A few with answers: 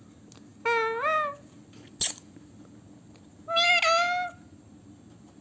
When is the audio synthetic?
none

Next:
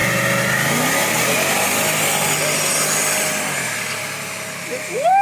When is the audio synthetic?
none

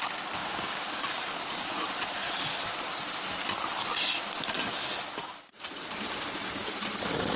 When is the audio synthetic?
0.4-0.9 (codec, DAC)